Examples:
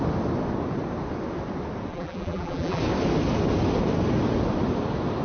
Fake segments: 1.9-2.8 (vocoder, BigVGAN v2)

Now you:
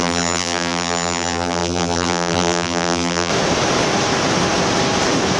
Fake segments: 0.0-3.3 (vocoder, BigVGAN v2)